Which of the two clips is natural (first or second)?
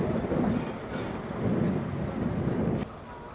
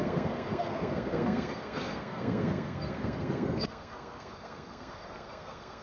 first